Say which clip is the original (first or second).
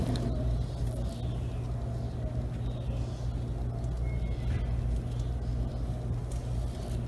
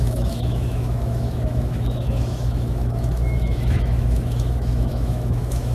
first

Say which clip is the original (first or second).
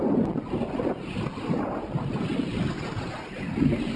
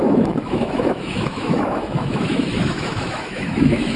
first